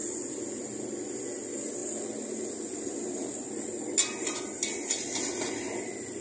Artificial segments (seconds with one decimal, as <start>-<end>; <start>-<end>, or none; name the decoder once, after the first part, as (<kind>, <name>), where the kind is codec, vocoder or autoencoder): none